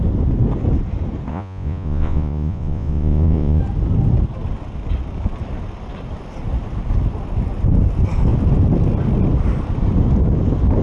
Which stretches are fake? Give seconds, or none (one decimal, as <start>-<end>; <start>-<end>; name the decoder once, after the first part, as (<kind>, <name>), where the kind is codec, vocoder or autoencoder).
1.3-3.6 (vocoder, Vocos)